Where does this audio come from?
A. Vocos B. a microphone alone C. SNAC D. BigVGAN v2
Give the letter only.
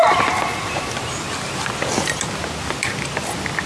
B